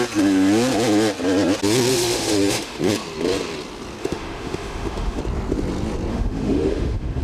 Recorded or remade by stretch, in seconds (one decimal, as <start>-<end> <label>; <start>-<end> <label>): 0.0-1.9 recorded; 1.9-2.9 remade; 2.9-4.0 recorded; 4.0-5.2 remade; 5.2-6.1 recorded; 6.1-7.2 remade